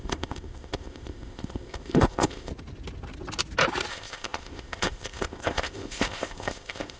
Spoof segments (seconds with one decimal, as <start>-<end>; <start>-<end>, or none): 0.0-2.5; 3.9-7.0